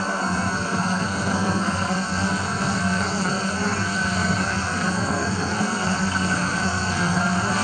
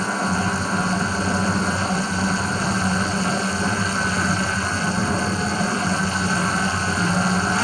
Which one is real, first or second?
second